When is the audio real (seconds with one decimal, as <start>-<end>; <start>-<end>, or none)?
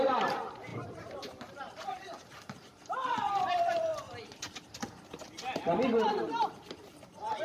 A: 3.9-6.2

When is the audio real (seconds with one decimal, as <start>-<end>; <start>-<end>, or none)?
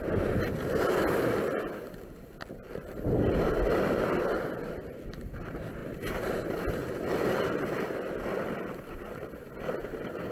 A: 0.0-10.3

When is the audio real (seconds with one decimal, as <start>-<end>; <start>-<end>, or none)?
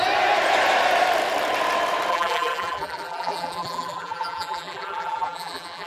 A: 0.0-2.1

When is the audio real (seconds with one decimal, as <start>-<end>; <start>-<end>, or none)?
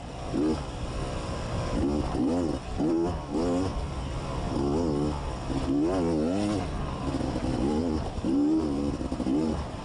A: 0.0-7.8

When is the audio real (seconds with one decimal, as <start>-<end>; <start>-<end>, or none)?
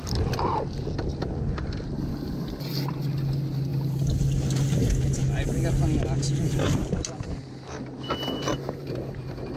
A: 0.0-8.5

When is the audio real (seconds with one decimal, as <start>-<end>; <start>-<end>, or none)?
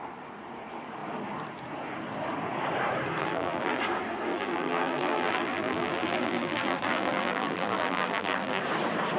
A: 0.0-3.2; 3.8-4.3; 8.6-9.2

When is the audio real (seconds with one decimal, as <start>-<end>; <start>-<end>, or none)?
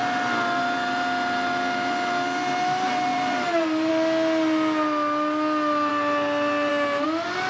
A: 0.0-3.1; 3.9-7.5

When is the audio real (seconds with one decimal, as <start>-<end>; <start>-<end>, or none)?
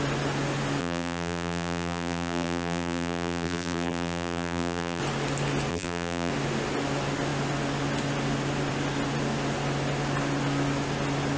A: 0.0-0.8; 5.0-5.7; 6.3-11.4